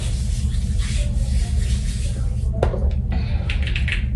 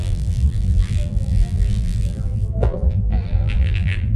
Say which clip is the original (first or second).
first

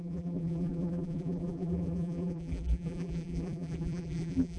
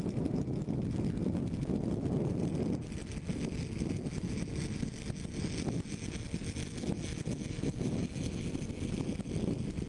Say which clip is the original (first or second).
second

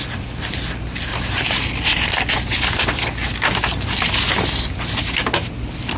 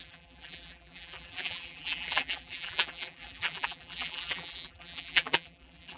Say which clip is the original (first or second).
first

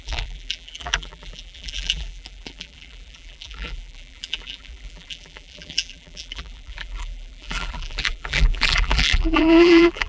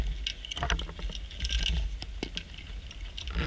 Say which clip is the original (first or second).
second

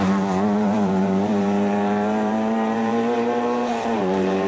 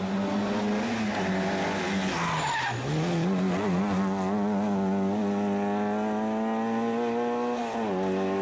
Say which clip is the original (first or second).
second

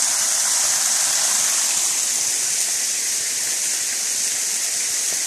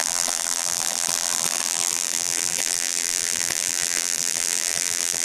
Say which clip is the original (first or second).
first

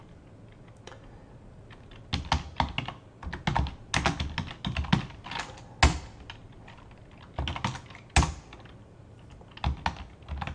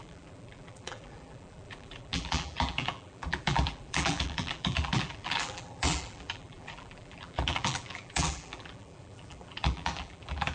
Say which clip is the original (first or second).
first